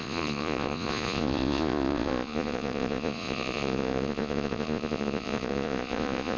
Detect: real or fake fake